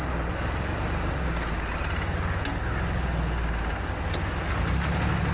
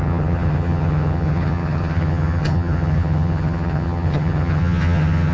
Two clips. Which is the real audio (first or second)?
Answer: first